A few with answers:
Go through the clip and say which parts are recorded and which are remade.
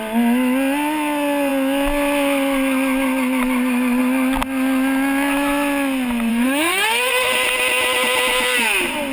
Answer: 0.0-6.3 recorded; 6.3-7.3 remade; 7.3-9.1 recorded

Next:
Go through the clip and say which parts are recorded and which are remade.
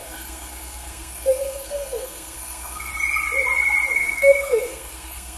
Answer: 0.0-2.9 remade; 2.9-3.9 recorded; 3.9-5.4 remade